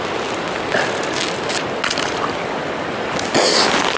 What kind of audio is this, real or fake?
real